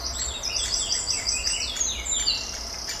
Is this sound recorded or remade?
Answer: recorded